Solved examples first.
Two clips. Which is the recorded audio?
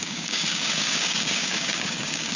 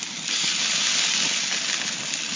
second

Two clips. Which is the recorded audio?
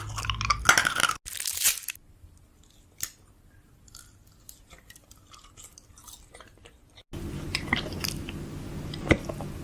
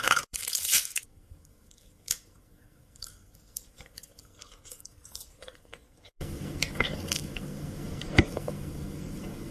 first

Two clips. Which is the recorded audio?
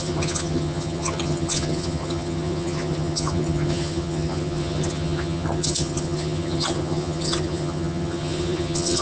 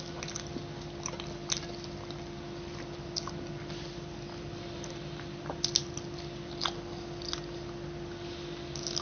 second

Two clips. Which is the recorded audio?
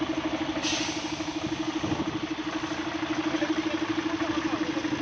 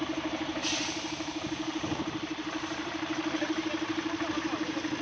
first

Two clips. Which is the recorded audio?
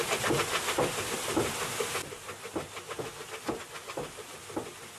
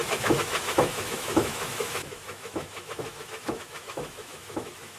first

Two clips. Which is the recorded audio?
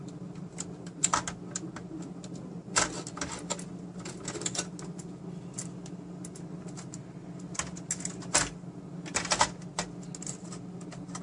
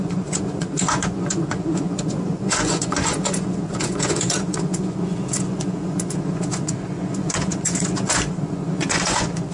first